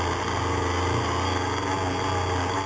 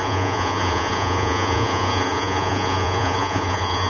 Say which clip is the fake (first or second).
second